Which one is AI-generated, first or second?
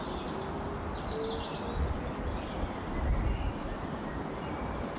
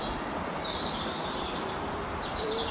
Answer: second